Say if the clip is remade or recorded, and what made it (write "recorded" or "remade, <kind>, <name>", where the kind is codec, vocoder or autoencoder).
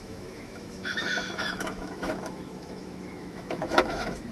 remade, autoencoder, DAC-VAE